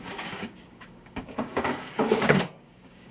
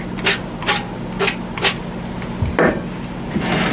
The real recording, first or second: second